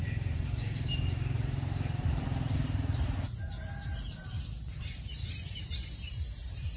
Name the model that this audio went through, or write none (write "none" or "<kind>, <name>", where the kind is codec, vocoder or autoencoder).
vocoder, BigVGAN v2